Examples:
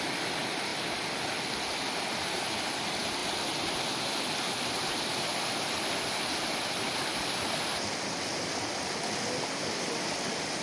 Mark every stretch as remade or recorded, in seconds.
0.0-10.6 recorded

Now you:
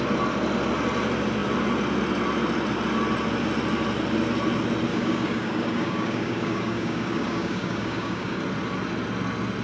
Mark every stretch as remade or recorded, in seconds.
0.0-4.9 recorded; 4.9-8.4 remade; 8.4-9.6 recorded

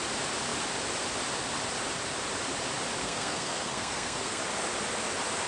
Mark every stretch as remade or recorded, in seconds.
0.0-3.0 recorded; 3.0-4.4 remade; 4.4-5.5 recorded

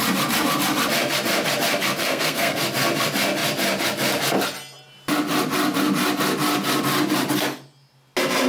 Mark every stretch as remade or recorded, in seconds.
0.0-2.0 recorded; 2.0-2.6 remade; 2.6-8.5 recorded

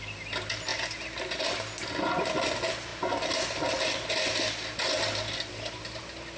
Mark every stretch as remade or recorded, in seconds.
0.0-6.4 recorded

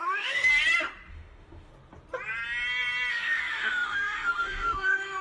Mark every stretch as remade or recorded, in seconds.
0.0-0.5 remade; 0.5-1.1 recorded; 1.1-1.7 remade; 1.7-3.1 recorded; 3.1-5.2 remade

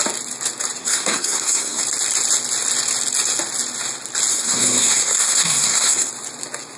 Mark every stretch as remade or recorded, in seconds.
0.0-0.8 recorded; 0.8-1.8 remade; 1.8-4.3 recorded; 4.3-6.1 remade; 6.1-6.8 recorded

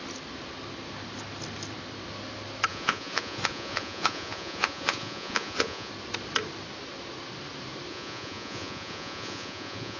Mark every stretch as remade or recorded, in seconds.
0.0-2.7 recorded; 2.7-5.9 remade; 5.9-7.9 recorded; 7.9-10.0 remade